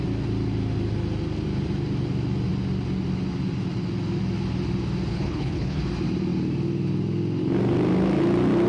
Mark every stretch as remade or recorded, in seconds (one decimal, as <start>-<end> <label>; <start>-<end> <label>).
0.0-5.1 recorded; 5.1-5.8 remade; 5.8-8.7 recorded